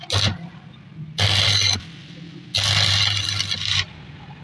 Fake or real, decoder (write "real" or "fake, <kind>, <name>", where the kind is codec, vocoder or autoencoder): fake, vocoder, BigVGAN v2